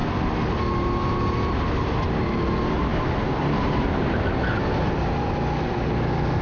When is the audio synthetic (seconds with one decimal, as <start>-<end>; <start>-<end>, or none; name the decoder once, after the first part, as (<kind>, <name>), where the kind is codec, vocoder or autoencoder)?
2.9-4.3 (vocoder, BigVGAN v2)

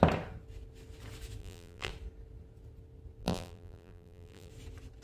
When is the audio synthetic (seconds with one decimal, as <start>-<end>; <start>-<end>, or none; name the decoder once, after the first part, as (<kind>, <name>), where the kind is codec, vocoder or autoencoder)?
1.4-1.9 (vocoder, BigVGAN v2); 3.2-4.5